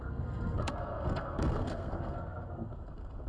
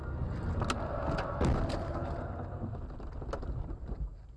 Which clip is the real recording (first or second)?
second